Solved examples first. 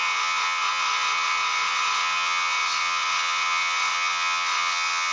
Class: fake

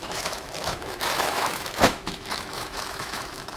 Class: fake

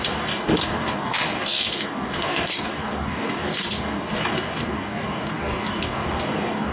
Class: fake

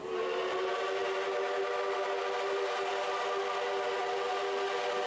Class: real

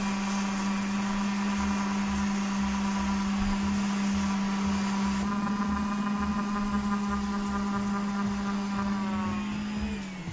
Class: real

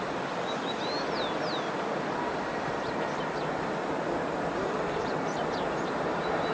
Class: real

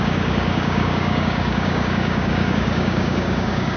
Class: fake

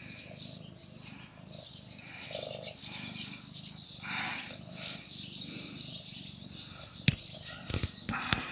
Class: real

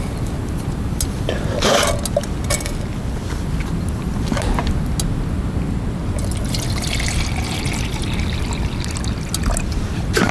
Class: real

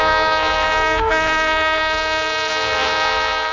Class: fake